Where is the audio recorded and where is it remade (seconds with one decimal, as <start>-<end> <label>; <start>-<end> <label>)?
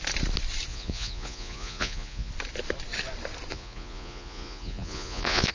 0.0-0.7 recorded; 0.7-2.3 remade; 2.3-3.5 recorded; 3.5-5.5 remade